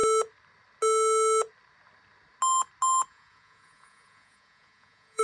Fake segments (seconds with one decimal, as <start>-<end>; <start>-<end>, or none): 3.1-5.2